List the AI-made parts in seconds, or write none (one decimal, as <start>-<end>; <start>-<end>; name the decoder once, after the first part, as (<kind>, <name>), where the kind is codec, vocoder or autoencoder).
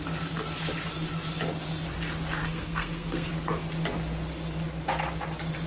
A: 2.4-3.3 (codec, SNAC)